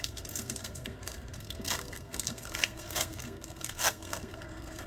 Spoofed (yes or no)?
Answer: yes